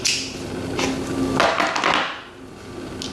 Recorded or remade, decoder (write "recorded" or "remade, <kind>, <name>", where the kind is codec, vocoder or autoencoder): recorded